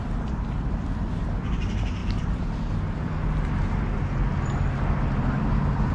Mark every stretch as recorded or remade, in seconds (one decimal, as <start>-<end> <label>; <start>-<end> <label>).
0.0-5.9 recorded